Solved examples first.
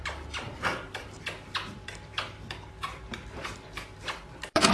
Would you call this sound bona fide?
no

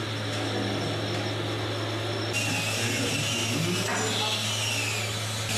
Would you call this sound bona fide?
yes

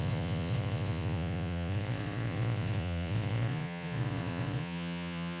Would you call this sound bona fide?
no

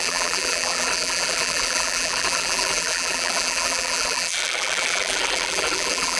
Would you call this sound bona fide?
no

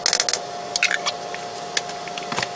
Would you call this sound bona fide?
yes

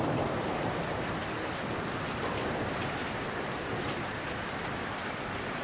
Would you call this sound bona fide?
no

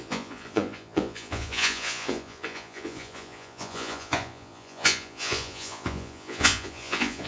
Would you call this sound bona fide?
no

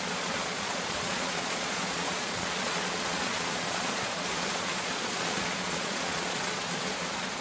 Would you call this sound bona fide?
no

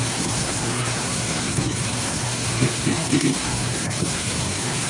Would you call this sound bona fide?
no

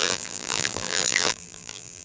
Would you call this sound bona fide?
no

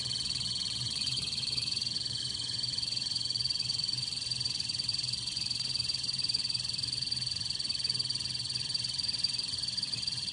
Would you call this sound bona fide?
no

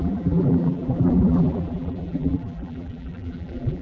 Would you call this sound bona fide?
no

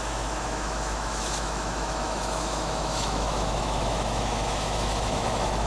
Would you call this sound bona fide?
no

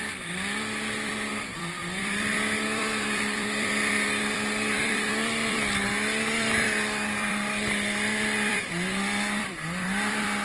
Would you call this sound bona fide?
no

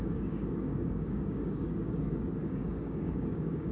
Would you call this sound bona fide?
no